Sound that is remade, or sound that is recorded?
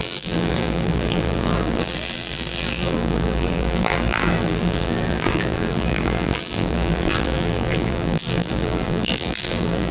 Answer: remade